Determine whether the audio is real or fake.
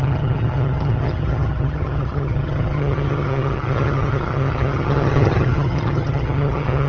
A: fake